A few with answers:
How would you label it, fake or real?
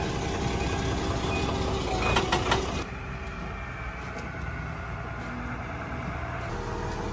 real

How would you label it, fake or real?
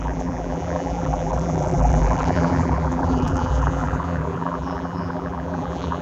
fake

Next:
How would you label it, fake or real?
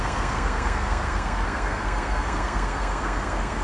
fake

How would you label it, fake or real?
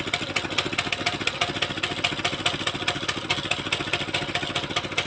real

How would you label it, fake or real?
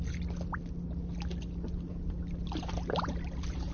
real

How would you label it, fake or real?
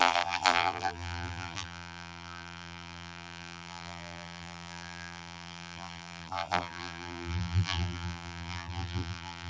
fake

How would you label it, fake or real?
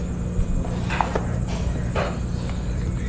real